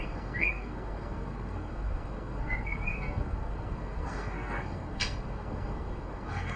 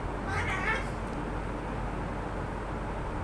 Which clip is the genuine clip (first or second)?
second